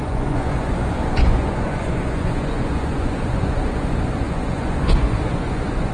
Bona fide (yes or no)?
no